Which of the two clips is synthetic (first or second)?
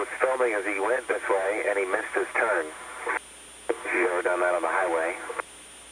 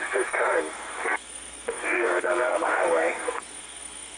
second